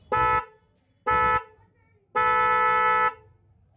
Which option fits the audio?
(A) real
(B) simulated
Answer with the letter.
A